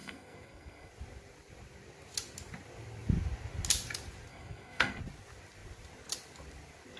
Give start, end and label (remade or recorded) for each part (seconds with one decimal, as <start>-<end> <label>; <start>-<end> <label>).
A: 0.0-0.9 remade; 0.9-4.3 recorded; 4.3-5.0 remade; 5.0-7.0 recorded